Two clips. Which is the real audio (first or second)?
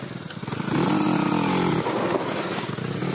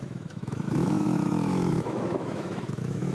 first